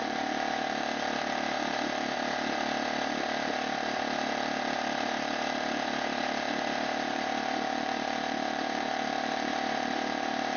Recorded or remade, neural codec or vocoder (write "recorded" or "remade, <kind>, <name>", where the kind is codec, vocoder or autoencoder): remade, vocoder, BigVGAN v2